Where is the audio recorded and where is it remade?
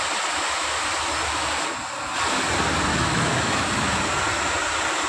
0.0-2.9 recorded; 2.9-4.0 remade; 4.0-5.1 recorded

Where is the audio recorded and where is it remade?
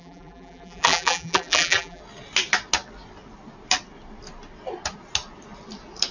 0.0-2.0 remade; 2.0-6.1 recorded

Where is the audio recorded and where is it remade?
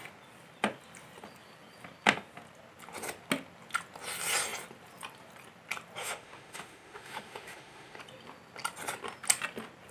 0.0-6.0 recorded; 6.0-8.0 remade; 8.0-9.9 recorded